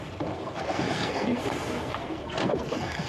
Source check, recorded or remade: remade